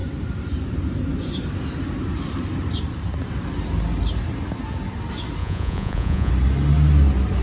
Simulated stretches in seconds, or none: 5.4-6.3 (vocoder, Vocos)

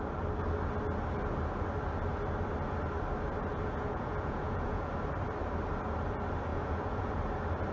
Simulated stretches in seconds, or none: 3.5-4.9 (vocoder, Vocos); 6.5-7.2

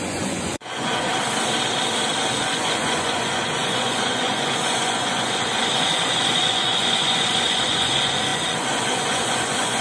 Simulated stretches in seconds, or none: 0.0-1.1 (vocoder, Vocos); 2.4-9.8

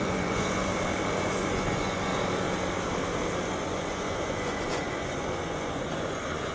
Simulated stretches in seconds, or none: 0.0-0.7 (vocoder, Vocos); 1.2-2.1; 3.5-6.5

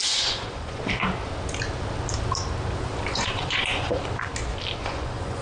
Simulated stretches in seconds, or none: 0.0-0.8 (vocoder, Vocos); 3.1-4.0; 4.8-5.4

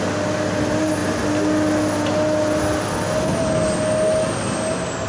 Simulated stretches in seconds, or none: none

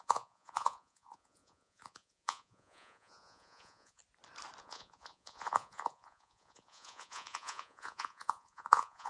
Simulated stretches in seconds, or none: 0.0-4.0 (vocoder, Vocos); 4.6-9.1

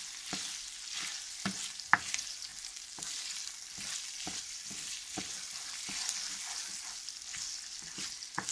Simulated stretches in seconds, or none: none